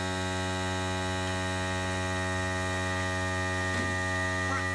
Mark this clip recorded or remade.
recorded